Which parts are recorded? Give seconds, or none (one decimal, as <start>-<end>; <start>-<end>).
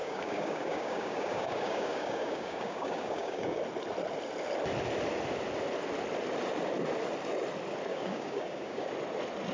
3.6-7.9; 8.9-9.5